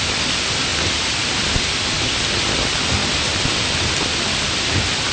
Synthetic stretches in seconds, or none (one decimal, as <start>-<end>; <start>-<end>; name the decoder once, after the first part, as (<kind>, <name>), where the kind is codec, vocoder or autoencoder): none